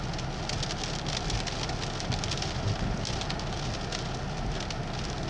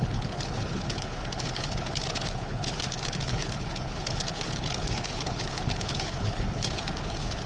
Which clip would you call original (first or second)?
first